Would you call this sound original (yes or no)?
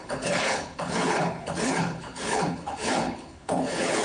no